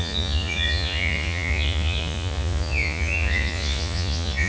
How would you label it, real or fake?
fake